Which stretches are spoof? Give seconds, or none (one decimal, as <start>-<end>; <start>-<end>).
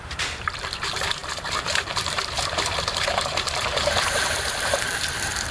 0.0-5.5